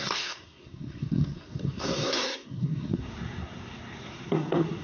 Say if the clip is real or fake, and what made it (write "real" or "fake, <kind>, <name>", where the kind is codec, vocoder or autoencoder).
fake, codec, SNAC